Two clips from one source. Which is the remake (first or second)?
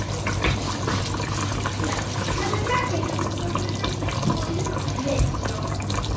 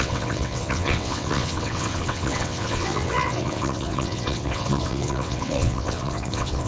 second